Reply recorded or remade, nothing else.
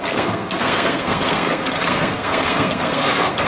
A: remade